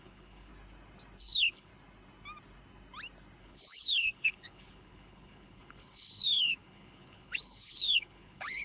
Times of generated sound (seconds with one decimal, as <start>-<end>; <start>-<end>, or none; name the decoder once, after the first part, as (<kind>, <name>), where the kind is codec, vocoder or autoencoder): 0.0-0.5 (codec, HILCodec); 1.2-1.7; 3.4-8.6